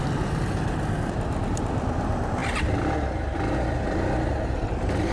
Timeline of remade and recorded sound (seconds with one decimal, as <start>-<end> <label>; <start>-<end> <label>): 0.0-5.1 recorded